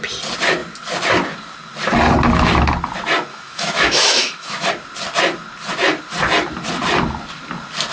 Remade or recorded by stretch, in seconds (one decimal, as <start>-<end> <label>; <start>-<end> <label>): 0.0-3.3 recorded; 3.3-4.7 remade; 4.7-7.9 recorded